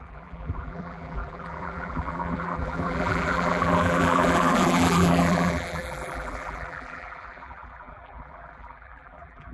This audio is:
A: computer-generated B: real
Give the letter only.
A